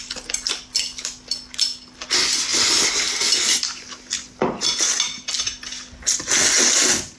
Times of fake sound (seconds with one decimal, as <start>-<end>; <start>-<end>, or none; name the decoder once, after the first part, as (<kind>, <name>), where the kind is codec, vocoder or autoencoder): none